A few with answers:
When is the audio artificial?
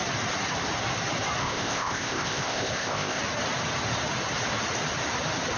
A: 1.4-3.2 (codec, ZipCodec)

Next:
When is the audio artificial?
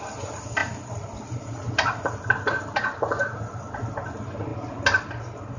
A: none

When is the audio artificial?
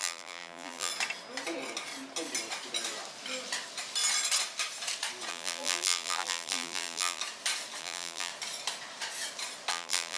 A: 0.0-0.9 (vocoder, BigVGAN v2); 5.3-7.2; 7.8-8.3; 9.7-10.2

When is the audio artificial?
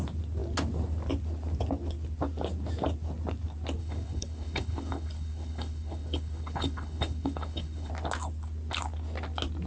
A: 3.8-7.9 (codec, HILCodec)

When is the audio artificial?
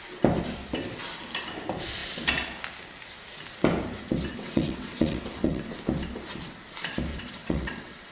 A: 4.3-5.7 (vocoder, WaveNeXt); 7.1-8.1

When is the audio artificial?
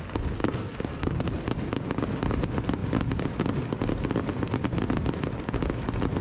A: 0.4-1.2 (codec, SNAC)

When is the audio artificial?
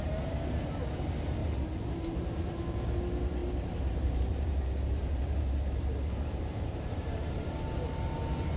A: 1.4-3.0 (vocoder, BigVGAN v2); 3.4-7.6